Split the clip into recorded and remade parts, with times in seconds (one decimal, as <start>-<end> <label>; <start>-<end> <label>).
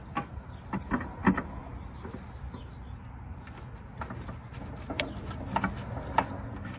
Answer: 0.0-6.8 recorded